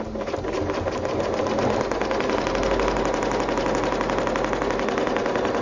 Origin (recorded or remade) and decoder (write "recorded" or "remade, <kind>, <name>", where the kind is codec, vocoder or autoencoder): recorded